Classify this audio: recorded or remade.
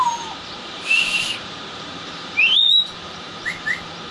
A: remade